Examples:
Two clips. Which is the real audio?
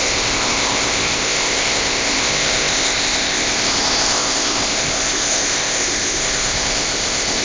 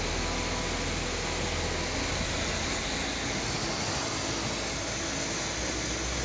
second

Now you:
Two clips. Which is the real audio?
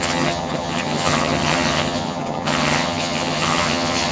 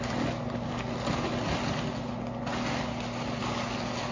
second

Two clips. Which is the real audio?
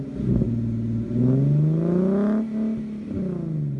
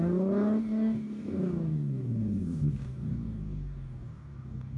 first